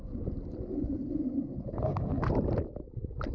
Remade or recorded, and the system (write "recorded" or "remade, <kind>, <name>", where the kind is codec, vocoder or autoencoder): recorded